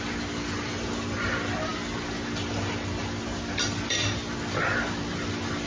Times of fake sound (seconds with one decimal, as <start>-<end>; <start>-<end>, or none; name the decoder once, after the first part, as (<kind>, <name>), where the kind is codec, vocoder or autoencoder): none